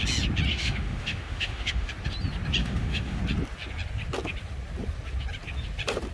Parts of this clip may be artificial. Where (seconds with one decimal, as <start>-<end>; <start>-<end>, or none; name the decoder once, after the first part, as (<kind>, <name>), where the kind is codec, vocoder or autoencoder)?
0.5-1.9 (autoencoder, DAC-VAE); 2.6-3.2